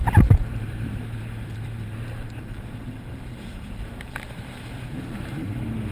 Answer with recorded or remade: remade